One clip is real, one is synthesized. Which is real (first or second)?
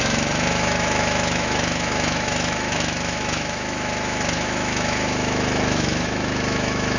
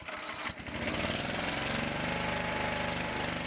second